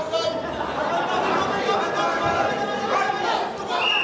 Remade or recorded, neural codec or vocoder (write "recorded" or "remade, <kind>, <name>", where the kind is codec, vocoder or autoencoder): recorded